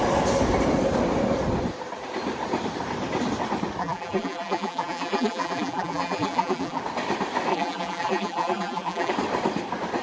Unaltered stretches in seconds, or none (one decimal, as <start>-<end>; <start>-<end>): 0.0-3.8; 6.8-7.5; 9.1-10.0